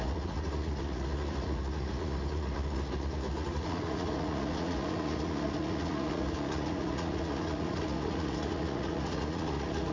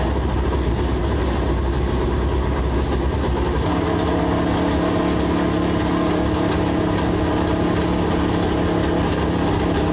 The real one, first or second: second